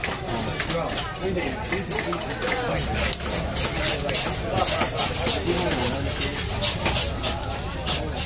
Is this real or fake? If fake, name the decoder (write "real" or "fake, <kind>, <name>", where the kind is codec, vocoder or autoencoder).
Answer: real